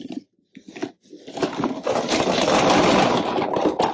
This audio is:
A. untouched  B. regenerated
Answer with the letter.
A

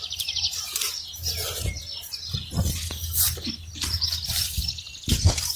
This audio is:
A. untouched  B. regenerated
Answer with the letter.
A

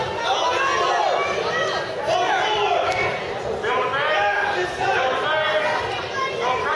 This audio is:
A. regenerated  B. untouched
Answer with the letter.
B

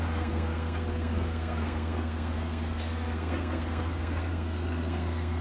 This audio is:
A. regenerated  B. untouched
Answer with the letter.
A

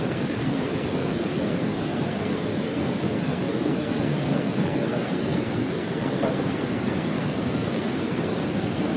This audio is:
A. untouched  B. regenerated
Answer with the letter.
B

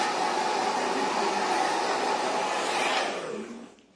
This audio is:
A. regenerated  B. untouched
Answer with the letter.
B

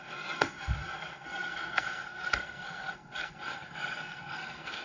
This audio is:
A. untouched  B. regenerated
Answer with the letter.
B